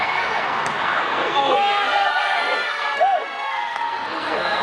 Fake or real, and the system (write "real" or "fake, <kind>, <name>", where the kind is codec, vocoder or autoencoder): fake, codec, SNAC